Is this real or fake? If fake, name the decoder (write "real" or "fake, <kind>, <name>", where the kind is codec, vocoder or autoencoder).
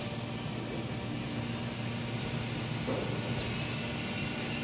real